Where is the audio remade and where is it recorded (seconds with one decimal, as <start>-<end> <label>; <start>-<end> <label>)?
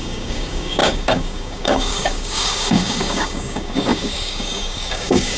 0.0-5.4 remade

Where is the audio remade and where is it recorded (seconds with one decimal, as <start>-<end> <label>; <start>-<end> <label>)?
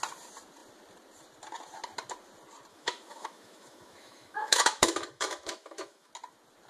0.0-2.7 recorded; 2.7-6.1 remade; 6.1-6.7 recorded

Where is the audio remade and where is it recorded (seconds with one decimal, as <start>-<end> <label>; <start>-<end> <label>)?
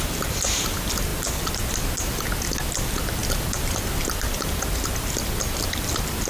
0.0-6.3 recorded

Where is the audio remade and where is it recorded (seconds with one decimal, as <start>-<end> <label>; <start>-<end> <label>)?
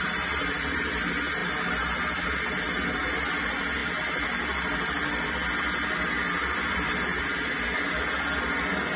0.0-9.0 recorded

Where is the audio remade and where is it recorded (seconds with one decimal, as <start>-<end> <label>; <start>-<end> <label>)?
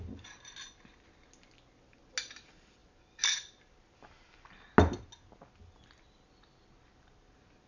0.0-7.7 recorded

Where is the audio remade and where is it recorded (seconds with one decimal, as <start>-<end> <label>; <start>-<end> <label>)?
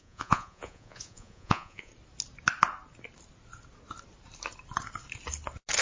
0.0-1.9 remade; 1.9-5.8 recorded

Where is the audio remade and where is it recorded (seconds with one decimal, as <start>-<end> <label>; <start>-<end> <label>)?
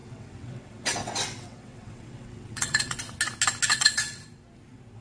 0.0-3.0 remade; 3.0-3.7 recorded; 3.7-4.2 remade; 4.2-5.0 recorded